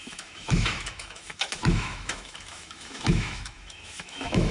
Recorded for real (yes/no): no